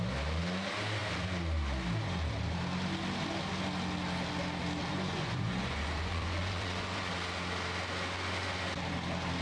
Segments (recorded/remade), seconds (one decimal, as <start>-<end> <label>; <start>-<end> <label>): 0.0-4.9 recorded; 4.9-7.1 remade; 7.1-9.4 recorded